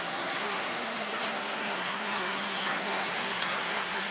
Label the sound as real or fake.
fake